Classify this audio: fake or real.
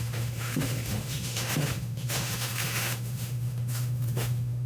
fake